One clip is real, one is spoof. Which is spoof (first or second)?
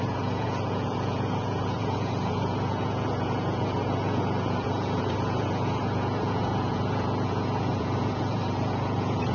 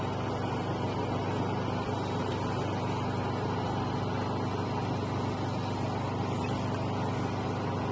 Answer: first